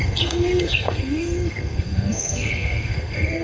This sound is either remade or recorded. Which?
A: remade